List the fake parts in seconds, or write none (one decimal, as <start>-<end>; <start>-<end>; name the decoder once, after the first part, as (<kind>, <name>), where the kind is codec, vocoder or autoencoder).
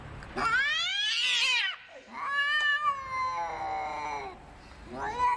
none